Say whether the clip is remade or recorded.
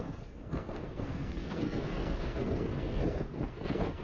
remade